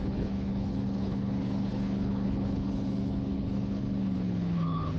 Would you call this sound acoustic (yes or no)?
no